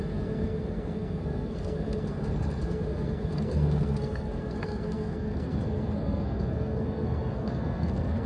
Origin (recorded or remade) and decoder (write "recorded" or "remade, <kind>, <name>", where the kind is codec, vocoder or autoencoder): remade, codec, SNAC